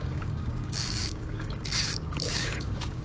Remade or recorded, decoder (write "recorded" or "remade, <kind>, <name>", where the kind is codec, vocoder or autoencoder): remade, codec, DAC